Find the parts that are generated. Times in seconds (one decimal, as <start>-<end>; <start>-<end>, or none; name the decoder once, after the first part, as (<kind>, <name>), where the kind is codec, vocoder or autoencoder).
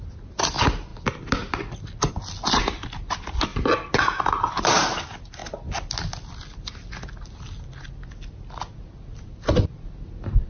none